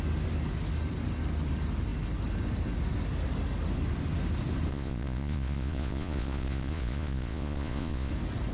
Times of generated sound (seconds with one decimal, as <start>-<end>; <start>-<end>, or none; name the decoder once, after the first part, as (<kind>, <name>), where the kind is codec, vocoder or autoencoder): 4.7-8.1 (vocoder, Vocos)